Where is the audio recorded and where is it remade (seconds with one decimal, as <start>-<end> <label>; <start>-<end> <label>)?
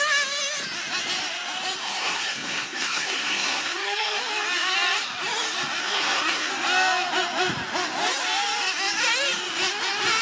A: 0.0-1.8 recorded; 1.8-4.2 remade; 4.2-5.8 recorded; 5.8-6.5 remade; 6.5-10.2 recorded